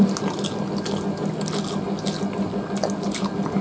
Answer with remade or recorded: recorded